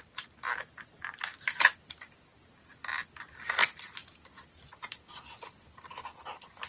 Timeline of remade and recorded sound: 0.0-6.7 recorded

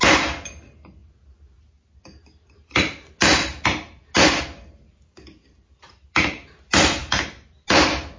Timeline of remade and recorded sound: 0.0-8.2 recorded

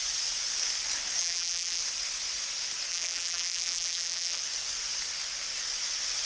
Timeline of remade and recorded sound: 0.0-1.2 recorded; 1.2-1.8 remade; 1.8-2.9 recorded; 2.9-4.4 remade; 4.4-6.3 recorded

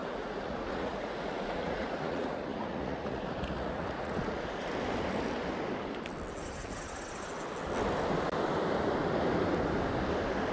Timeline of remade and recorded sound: 0.0-4.7 remade; 4.7-10.5 recorded

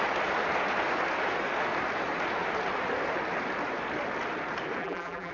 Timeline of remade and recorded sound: 0.0-4.8 recorded; 4.8-5.3 remade

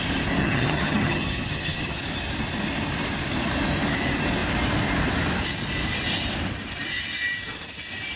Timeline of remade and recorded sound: 0.0-0.4 recorded; 0.4-2.0 remade; 2.0-8.2 recorded

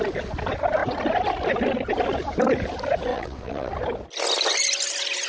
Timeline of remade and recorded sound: 0.0-3.1 recorded; 3.1-3.7 remade; 3.7-5.3 recorded

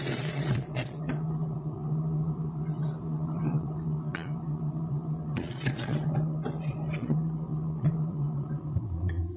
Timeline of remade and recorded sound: 0.0-9.4 remade